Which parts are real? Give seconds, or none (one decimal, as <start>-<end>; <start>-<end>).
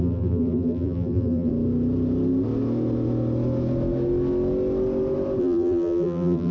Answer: 1.5-5.4